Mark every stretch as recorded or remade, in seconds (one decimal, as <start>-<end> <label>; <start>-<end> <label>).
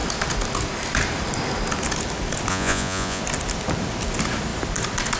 0.0-2.5 recorded; 2.5-3.2 remade; 3.2-5.2 recorded